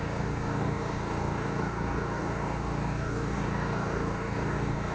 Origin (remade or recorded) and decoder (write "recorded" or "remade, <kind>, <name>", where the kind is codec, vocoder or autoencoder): remade, codec, DAC